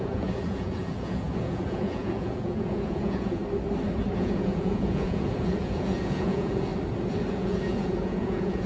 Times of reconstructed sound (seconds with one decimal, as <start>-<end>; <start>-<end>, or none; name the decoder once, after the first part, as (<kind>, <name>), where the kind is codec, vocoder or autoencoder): 0.0-3.4 (vocoder, Vocos); 4.2-6.7; 7.3-8.7

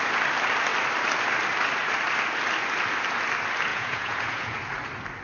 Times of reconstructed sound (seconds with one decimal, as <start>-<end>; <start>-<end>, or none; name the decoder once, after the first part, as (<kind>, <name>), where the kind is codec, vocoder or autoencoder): 3.7-4.6 (vocoder, Vocos)